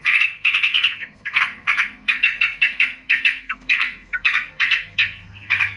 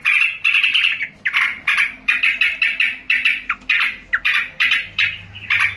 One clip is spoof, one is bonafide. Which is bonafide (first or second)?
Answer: second